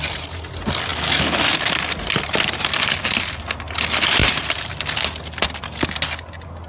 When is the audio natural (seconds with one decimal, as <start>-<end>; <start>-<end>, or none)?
0.0-4.2; 4.7-6.7